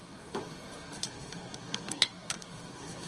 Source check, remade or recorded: remade